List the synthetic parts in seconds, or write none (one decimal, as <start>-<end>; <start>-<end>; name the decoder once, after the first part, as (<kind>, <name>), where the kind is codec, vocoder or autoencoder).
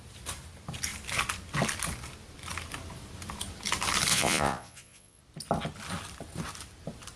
4.1-5.2 (vocoder, Vocos)